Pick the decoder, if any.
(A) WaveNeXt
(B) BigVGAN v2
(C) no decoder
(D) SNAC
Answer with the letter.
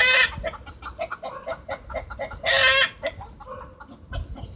C